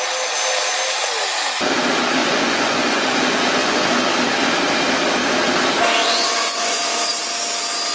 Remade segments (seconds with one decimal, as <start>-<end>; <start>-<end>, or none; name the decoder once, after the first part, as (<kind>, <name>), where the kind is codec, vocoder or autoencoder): 2.2-4.1 (vocoder, Vocos); 6.0-6.8